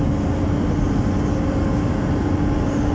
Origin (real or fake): real